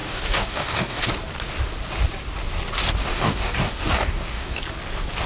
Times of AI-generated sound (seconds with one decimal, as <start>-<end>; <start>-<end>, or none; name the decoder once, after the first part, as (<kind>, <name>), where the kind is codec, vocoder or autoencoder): 0.0-1.0 (codec, DAC); 3.0-4.6